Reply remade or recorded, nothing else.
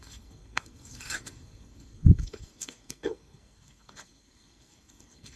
remade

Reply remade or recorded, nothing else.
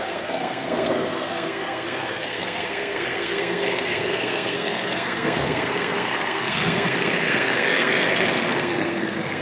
remade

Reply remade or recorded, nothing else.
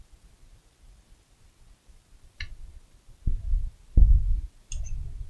recorded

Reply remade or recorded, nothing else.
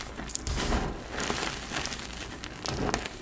recorded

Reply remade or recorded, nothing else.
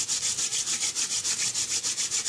recorded